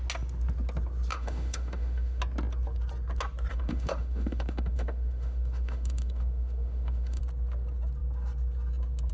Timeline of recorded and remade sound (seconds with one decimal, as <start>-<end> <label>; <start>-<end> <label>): 0.0-1.1 recorded; 1.1-2.2 remade; 2.2-3.5 recorded; 3.5-7.2 remade; 7.2-9.1 recorded